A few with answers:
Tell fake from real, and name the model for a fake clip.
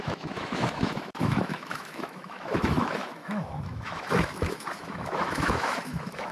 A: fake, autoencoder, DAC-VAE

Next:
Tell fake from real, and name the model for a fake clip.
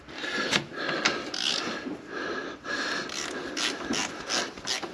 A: real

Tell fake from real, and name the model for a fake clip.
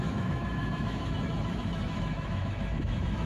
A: fake, autoencoder, DAC-VAE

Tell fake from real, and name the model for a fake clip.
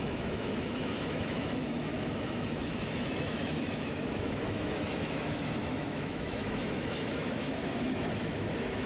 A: fake, autoencoder, DAC-VAE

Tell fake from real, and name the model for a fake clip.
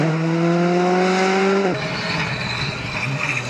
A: real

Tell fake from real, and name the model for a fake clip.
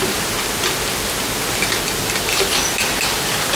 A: real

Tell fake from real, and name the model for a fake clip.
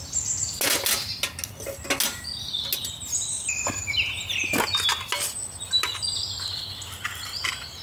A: real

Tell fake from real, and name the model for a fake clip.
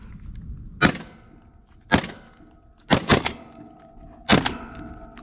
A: real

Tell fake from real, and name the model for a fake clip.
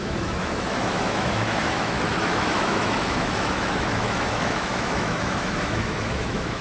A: fake, autoencoder, DAC-VAE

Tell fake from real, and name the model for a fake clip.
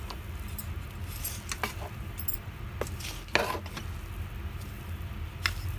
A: real